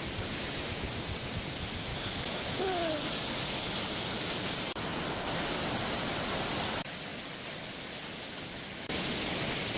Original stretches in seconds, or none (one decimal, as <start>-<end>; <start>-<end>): 0.0-1.9; 2.6-9.8